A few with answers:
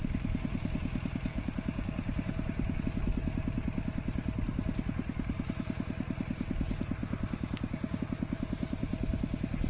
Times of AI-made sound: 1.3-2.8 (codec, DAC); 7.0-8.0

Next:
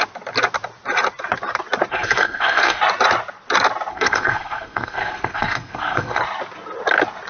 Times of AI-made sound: 1.9-2.8 (codec, SNAC); 3.9-6.2